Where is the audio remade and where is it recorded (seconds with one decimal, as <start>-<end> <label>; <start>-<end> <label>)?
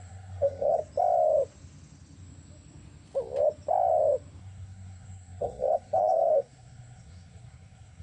0.0-0.8 remade; 0.8-4.4 recorded; 4.4-8.0 remade